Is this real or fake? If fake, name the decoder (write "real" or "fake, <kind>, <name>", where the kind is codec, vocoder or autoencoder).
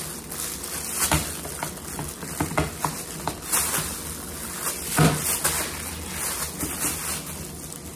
real